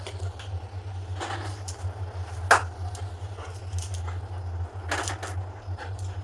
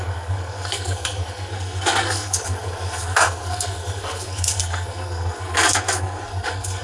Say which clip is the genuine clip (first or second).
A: first